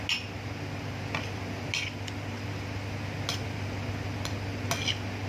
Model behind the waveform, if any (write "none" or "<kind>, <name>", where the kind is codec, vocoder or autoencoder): none